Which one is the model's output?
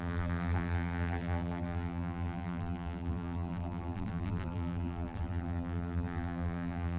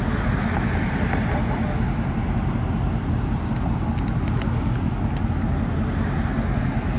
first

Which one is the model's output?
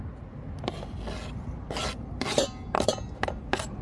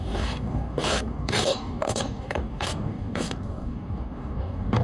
second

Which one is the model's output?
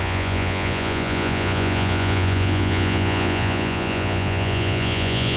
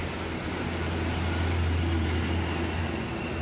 first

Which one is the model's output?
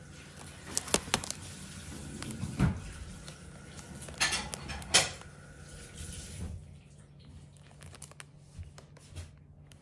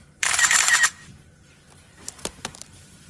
second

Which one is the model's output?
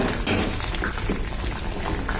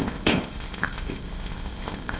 second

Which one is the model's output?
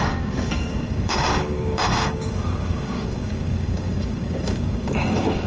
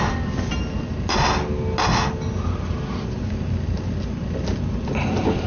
first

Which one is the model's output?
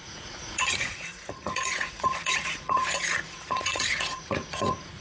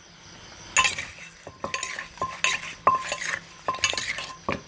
first